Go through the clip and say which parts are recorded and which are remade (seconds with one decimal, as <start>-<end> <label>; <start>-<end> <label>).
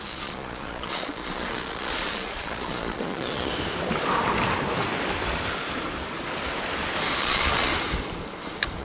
0.0-3.5 remade; 3.5-7.2 recorded; 7.2-7.7 remade; 7.7-8.8 recorded